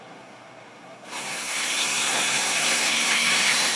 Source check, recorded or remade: remade